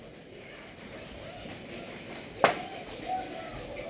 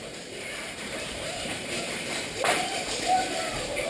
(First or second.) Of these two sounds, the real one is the first